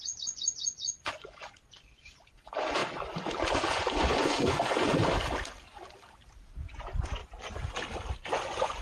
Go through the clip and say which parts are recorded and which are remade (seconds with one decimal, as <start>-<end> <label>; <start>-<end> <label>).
0.0-2.8 remade; 2.8-3.5 recorded; 3.5-5.0 remade; 5.0-6.8 recorded; 6.8-7.2 remade; 7.2-8.3 recorded; 8.3-8.8 remade